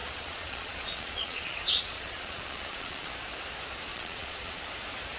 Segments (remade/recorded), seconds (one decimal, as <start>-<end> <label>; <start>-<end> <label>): 0.0-3.1 remade; 3.1-3.9 recorded; 3.9-4.6 remade; 4.6-5.2 recorded